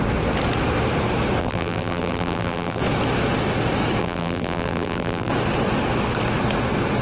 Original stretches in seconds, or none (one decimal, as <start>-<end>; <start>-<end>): 0.0-1.4; 2.8-4.0; 5.3-7.0